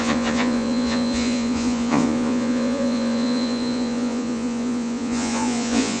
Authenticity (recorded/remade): remade